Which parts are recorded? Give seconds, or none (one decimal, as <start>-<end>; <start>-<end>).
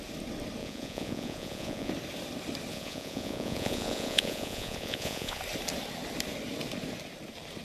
0.0-0.6; 1.9-2.7; 5.4-7.6